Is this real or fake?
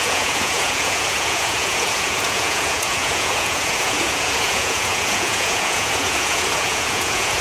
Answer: fake